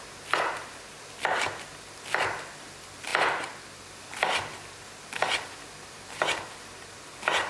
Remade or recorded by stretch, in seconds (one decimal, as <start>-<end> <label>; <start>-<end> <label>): 0.0-7.5 recorded